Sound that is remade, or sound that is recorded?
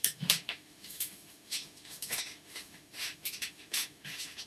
remade